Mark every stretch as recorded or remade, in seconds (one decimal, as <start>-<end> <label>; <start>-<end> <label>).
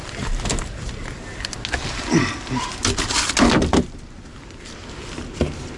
0.0-5.8 recorded